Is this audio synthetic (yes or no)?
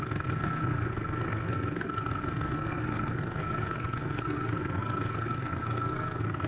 yes